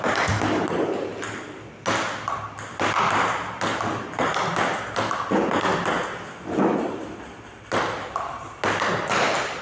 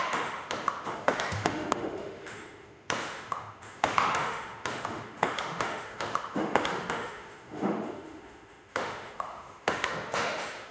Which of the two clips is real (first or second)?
first